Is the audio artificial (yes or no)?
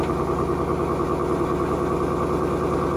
no